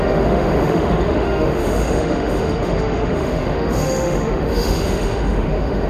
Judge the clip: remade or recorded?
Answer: remade